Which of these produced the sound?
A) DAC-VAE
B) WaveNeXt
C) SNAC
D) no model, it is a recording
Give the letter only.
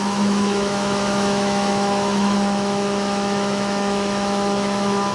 A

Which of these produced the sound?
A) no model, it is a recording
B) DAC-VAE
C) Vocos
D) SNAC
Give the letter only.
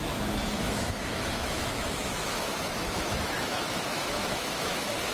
B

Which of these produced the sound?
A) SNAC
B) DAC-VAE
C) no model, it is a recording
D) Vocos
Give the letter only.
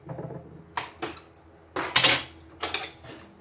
C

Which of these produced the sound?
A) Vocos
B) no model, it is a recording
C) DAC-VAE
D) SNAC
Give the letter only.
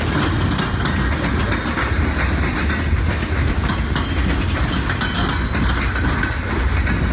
B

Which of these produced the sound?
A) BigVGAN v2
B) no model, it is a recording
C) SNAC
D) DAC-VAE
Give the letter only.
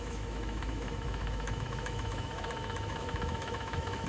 D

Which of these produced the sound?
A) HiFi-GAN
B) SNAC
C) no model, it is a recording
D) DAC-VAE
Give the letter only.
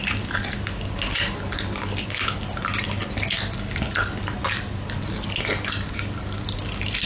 C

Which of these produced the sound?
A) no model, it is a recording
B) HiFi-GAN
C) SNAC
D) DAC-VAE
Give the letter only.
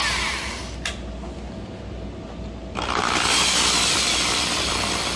A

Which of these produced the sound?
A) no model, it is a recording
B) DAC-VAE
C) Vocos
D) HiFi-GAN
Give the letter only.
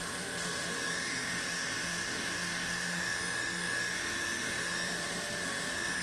B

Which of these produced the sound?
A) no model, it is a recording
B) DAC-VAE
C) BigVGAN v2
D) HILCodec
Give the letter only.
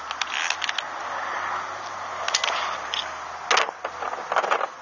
A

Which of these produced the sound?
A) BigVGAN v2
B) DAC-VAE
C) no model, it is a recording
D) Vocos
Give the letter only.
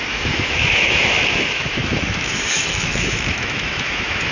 B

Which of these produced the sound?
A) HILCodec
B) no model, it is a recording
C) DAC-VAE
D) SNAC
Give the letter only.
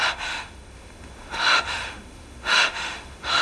C